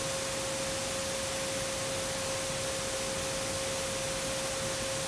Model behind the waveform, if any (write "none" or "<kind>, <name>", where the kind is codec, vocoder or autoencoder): none